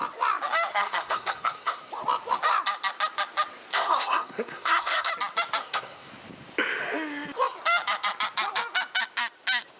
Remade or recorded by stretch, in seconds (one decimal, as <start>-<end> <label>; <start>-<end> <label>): 0.0-0.7 recorded; 0.7-1.9 remade; 1.9-3.7 recorded; 3.7-5.1 remade; 5.1-5.6 recorded; 5.6-6.1 remade; 6.1-9.8 recorded